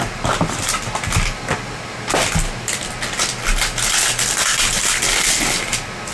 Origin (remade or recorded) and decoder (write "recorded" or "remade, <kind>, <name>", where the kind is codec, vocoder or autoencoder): recorded